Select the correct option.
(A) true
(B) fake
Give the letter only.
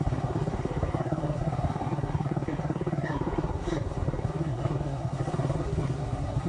B